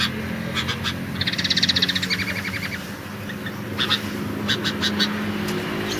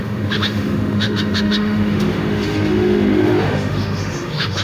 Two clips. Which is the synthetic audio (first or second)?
second